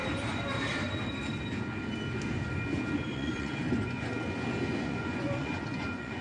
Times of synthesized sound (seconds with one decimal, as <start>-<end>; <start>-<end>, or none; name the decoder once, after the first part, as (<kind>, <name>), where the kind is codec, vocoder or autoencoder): 3.1-4.1 (vocoder, Vocos); 4.7-6.2